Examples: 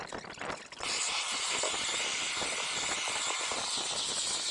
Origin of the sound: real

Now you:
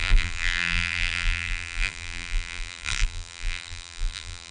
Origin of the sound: fake